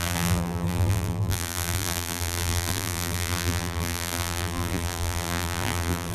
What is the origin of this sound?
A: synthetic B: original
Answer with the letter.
A